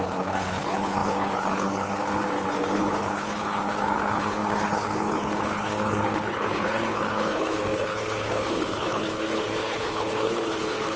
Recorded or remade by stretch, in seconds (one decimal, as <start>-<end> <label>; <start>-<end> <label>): 0.0-11.0 remade